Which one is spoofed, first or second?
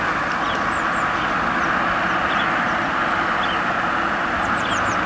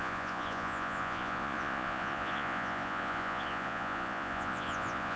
second